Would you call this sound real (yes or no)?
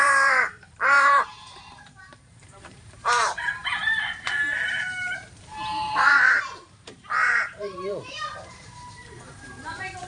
no